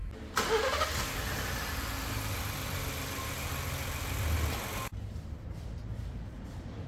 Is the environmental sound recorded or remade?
recorded